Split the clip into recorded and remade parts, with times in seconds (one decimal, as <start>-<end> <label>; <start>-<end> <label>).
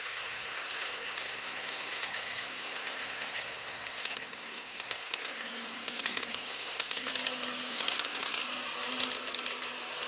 0.0-7.1 remade; 7.1-7.7 recorded; 7.7-8.4 remade; 8.4-10.1 recorded